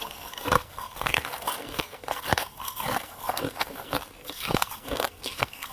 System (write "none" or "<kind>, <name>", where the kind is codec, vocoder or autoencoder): codec, SNAC